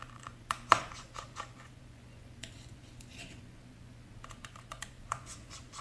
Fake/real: fake